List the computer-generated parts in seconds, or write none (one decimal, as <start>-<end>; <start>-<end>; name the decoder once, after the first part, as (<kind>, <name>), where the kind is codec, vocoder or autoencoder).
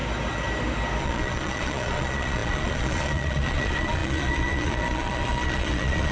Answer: 1.0-6.1 (vocoder, Vocos)